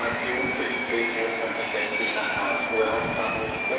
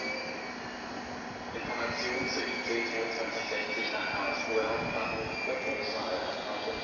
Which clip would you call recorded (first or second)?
second